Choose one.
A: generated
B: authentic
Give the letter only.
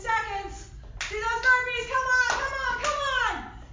B